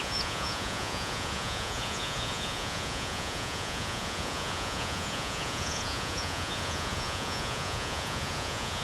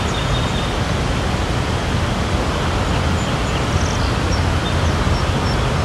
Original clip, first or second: second